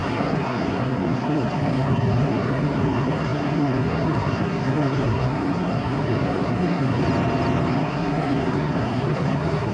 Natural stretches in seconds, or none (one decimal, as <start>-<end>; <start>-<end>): 7.0-7.7